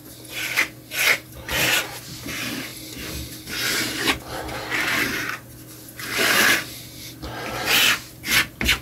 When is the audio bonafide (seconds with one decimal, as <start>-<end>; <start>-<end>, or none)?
0.0-8.8

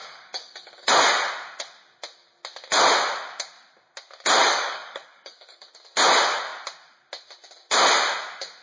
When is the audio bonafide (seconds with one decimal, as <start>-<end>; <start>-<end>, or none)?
0.9-4.4; 5.7-8.6

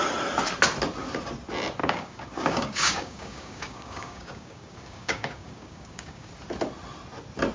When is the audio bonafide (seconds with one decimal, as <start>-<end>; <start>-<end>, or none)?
0.0-1.8; 6.3-7.5

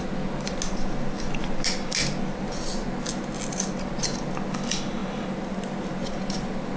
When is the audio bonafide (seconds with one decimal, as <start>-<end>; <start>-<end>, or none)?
0.0-6.8

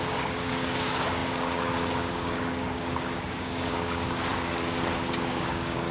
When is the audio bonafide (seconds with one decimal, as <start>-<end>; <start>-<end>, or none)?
none

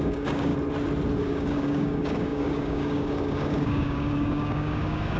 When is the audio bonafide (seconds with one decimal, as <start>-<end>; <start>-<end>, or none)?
0.5-1.2

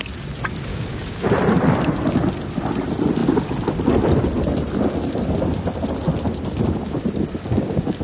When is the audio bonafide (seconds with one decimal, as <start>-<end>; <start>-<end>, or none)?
0.0-0.7; 1.3-7.4

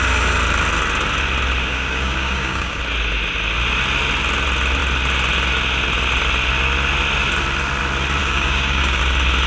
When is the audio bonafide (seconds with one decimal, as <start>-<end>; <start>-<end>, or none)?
0.0-1.6; 2.8-8.2; 9.0-9.5